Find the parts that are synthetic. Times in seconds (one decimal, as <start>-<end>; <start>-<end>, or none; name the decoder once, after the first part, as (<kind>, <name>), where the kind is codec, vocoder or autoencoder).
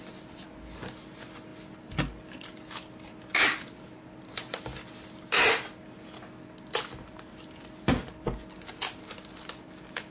none